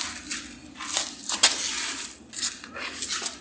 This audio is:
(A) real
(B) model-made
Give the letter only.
A